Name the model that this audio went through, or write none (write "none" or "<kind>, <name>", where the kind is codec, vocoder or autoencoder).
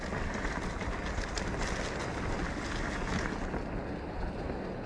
none